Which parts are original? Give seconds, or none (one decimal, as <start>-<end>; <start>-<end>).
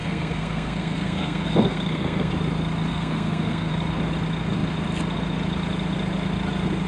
2.3-2.9; 3.7-6.9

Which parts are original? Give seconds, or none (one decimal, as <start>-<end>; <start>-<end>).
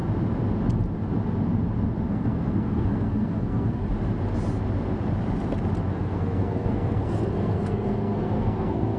0.0-2.1; 3.8-5.9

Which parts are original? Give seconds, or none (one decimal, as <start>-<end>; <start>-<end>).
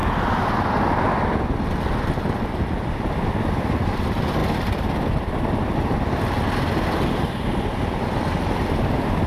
0.0-9.3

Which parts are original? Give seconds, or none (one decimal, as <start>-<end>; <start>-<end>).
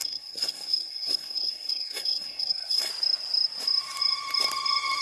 2.9-5.0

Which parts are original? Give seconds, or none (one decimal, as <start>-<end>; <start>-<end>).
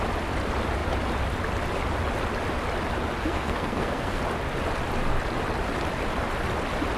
0.0-3.2; 4.2-7.0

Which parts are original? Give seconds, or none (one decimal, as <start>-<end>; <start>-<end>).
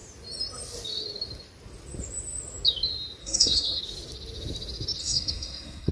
0.0-3.2; 3.8-5.0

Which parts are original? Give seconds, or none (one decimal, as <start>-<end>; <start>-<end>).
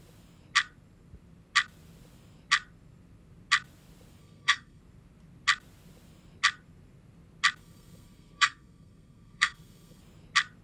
0.0-4.2; 4.8-7.6; 10.0-10.6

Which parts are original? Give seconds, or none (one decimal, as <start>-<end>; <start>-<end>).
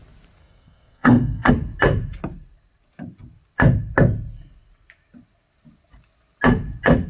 0.0-0.4; 1.5-7.1